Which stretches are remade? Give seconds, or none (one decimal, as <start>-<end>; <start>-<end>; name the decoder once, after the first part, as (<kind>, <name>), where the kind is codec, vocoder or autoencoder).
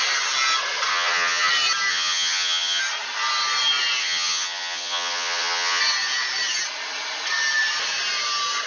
0.9-1.5 (vocoder, HiFi-GAN); 1.9-2.8; 4.0-5.8